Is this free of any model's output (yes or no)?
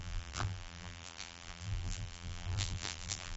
no